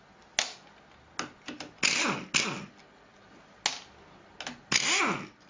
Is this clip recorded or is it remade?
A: recorded